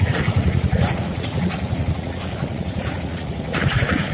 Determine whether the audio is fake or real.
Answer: fake